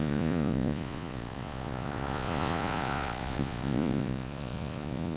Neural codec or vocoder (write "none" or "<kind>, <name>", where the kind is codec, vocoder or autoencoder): vocoder, Vocos